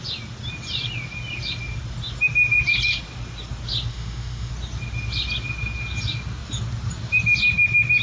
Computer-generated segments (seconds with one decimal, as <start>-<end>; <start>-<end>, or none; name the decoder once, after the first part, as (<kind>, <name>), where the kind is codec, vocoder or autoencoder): 3.9-4.5 (autoencoder, DAC-VAE)